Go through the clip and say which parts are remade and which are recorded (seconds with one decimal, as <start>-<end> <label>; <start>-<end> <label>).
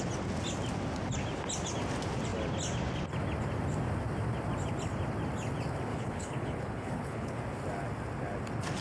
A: 0.0-5.9 recorded; 5.9-7.4 remade; 7.4-8.8 recorded